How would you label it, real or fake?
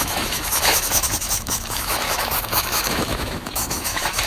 fake